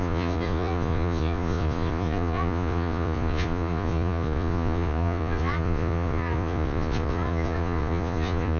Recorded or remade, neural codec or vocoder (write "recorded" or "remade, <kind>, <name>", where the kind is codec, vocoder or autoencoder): remade, vocoder, Vocos